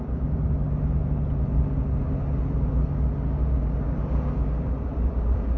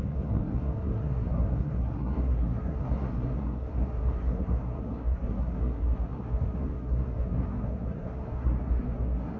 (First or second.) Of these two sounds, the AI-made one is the second